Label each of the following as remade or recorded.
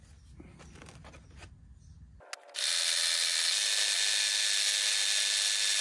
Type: recorded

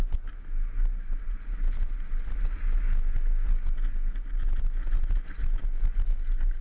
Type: recorded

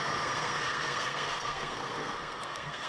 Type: remade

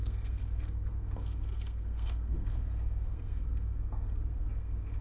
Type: remade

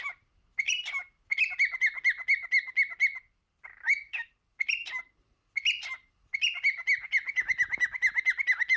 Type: recorded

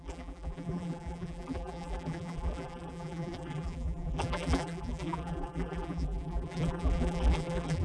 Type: remade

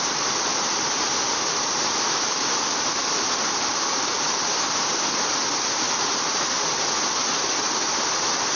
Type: recorded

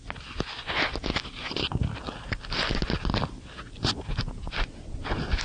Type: recorded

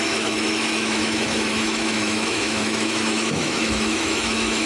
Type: remade